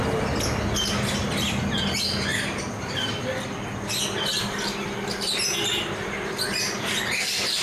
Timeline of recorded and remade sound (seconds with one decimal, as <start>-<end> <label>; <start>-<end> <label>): 0.0-7.6 recorded